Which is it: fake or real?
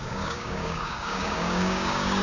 fake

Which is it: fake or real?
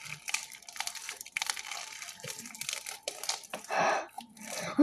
fake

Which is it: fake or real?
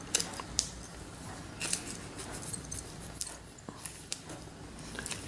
real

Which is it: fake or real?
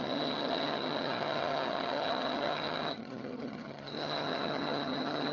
fake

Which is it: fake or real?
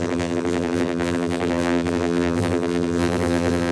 fake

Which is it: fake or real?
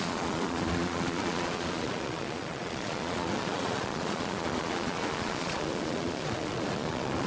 fake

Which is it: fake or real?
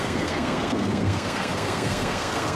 fake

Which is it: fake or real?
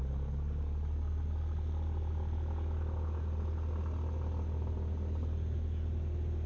real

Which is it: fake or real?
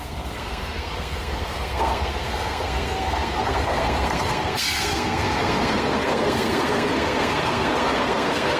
fake